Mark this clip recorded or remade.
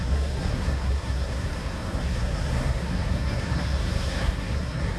remade